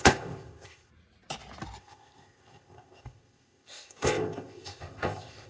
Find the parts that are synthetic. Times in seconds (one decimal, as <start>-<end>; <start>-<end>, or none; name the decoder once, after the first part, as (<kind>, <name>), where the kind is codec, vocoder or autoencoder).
0.0-0.9 (codec, ZipCodec); 1.8-5.5